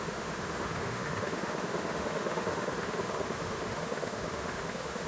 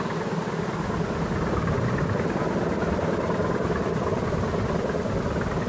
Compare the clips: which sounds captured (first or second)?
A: second